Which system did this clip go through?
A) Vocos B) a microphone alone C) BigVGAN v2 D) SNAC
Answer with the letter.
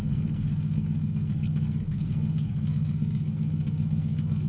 D